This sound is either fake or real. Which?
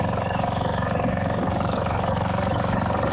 fake